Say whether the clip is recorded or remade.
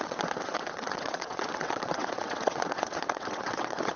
remade